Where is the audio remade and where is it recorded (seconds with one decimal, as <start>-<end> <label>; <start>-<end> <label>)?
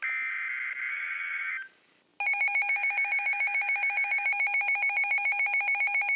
0.0-0.9 recorded; 0.9-1.5 remade; 1.5-6.2 recorded